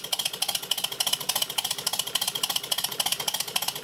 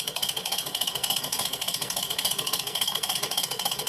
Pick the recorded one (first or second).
first